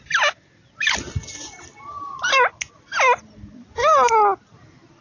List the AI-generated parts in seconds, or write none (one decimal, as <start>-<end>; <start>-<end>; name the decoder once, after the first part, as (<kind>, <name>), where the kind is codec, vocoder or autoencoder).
none